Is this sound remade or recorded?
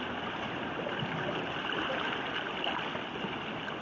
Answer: recorded